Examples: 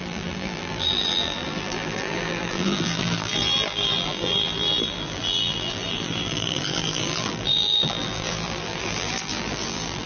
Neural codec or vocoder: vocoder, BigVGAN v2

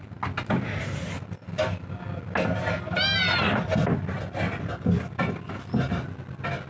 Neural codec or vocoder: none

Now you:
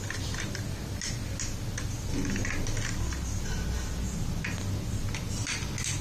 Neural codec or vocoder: none